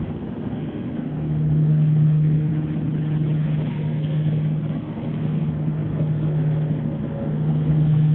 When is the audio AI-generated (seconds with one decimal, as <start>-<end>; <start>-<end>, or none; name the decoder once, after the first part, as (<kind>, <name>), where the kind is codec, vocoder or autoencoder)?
0.0-2.5 (codec, SNAC); 3.7-8.1